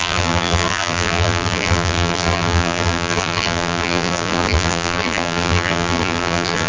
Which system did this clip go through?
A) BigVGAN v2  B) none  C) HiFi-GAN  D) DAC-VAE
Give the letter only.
A